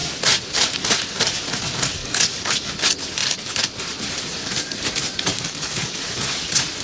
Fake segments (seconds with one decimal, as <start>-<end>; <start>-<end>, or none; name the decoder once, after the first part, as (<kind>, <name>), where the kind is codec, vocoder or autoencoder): 2.0-2.7 (codec, DAC); 5.3-6.0